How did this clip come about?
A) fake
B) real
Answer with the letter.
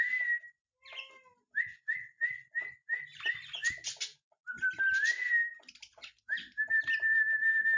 B